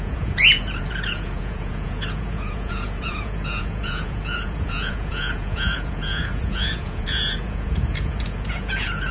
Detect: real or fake fake